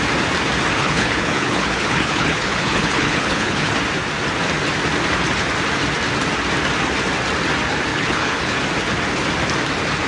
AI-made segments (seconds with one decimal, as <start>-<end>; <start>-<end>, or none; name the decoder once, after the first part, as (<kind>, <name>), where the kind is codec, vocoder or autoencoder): 0.8-3.7 (codec, HILCodec); 7.9-8.6